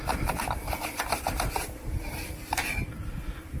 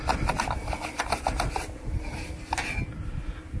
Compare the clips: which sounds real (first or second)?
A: second